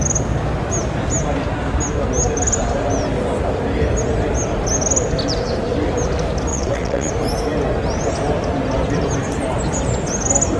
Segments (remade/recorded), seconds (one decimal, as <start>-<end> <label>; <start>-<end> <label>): 0.0-6.5 recorded; 6.5-7.1 remade; 7.1-10.6 recorded